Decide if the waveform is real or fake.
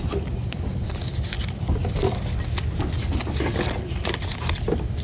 real